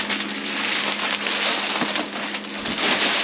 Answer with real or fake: real